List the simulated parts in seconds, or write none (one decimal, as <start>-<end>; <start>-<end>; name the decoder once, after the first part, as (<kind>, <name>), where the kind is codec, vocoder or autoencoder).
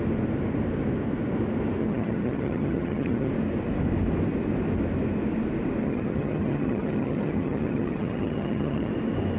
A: 1.8-3.3 (vocoder, HiFi-GAN); 5.8-8.9